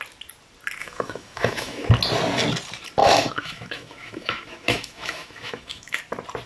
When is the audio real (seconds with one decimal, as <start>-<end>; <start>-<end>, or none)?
0.0-0.8; 1.9-3.0; 6.0-6.5